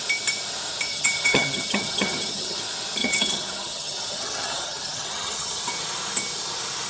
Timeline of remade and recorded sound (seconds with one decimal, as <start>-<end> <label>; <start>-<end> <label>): 0.0-0.9 recorded; 0.9-2.6 remade; 2.6-3.0 recorded; 3.0-5.6 remade; 5.6-6.9 recorded